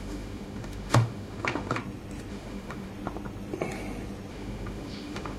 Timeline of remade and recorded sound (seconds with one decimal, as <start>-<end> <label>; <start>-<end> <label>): 0.0-1.8 remade; 1.8-2.3 recorded; 2.3-2.9 remade; 2.9-4.3 recorded; 4.3-5.4 remade